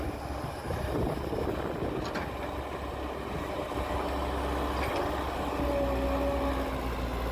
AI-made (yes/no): no